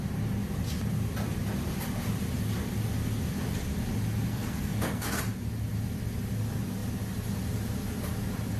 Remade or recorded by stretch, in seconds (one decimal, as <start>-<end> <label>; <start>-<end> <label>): 0.0-4.3 recorded; 4.3-5.2 remade; 5.2-8.6 recorded